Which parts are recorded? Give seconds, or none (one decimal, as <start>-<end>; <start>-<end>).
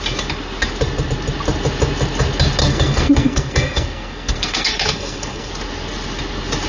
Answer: 0.0-2.6; 5.5-6.7